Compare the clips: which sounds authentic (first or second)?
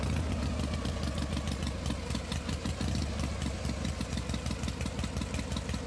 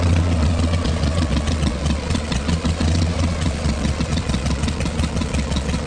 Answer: first